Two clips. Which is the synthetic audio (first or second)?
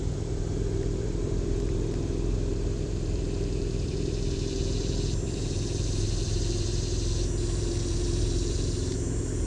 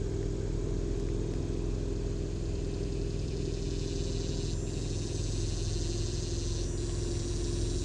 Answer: first